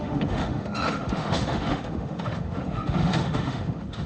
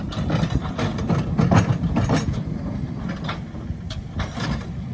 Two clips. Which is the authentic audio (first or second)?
second